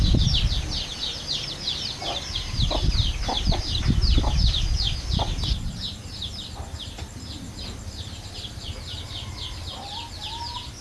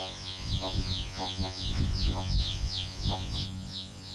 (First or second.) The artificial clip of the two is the second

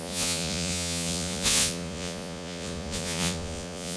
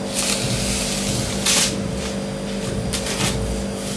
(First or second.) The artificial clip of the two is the first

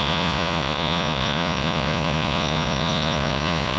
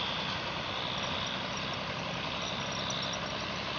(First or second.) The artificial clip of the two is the first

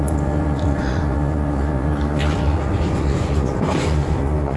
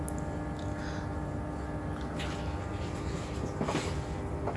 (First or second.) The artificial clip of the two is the first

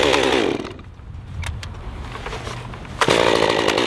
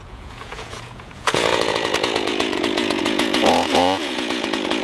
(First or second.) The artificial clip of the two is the second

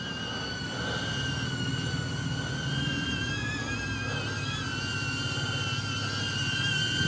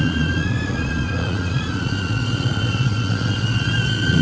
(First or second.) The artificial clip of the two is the second